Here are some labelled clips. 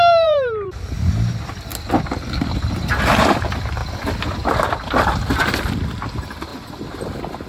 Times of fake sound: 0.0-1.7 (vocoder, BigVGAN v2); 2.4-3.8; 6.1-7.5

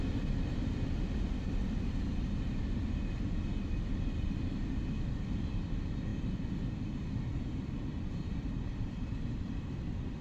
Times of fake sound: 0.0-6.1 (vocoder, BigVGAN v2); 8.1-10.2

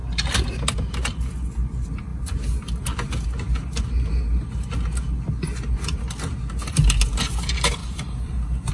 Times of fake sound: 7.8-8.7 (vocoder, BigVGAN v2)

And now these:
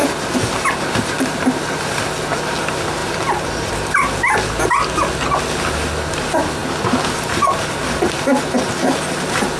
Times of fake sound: 3.0-3.7 (vocoder, BigVGAN v2)

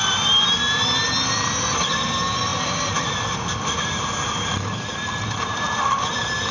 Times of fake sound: 0.0-6.5 (vocoder, BigVGAN v2)

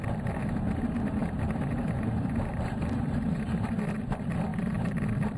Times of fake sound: 1.2-3.5 (vocoder, BigVGAN v2); 4.5-5.0